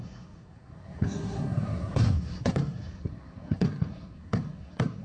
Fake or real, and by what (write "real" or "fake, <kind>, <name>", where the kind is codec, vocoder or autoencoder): fake, codec, SNAC